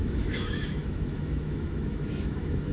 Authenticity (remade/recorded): remade